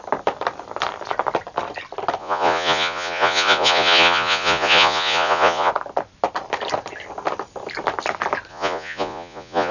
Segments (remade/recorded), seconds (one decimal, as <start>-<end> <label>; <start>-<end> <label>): 0.0-2.2 recorded; 2.2-5.7 remade; 5.7-8.5 recorded; 8.5-9.7 remade

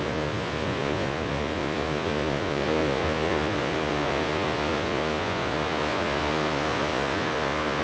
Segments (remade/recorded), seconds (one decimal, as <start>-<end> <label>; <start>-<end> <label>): 0.0-7.8 remade

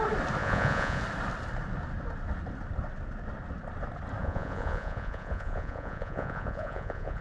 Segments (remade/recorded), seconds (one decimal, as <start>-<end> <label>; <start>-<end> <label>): 0.0-0.4 recorded; 0.4-1.0 remade; 1.0-4.2 recorded; 4.2-7.2 remade

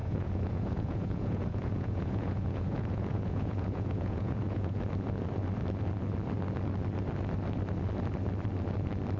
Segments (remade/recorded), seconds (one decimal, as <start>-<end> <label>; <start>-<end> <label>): 0.0-4.8 remade; 4.8-9.2 recorded

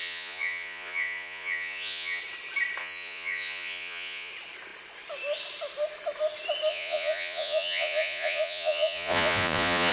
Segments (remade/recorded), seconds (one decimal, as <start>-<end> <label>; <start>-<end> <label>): 0.0-2.2 remade; 2.2-2.8 recorded; 2.8-4.3 remade; 4.3-6.7 recorded; 6.7-9.9 remade

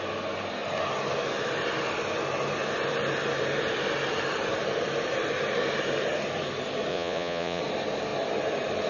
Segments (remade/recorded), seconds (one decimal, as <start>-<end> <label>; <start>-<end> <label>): 0.0-6.9 recorded; 6.9-7.6 remade; 7.6-8.9 recorded